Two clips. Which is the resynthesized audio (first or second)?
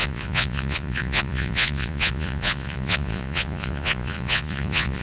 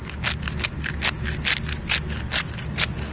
first